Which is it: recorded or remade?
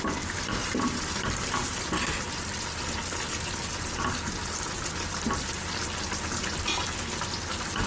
recorded